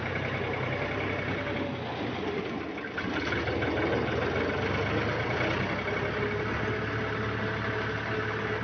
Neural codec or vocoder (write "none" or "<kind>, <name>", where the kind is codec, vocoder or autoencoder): none